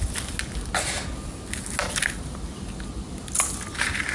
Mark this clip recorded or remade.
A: recorded